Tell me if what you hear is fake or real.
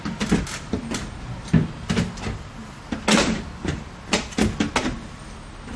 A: real